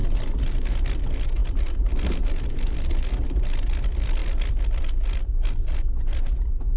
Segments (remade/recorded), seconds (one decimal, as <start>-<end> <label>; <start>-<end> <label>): 0.0-6.8 recorded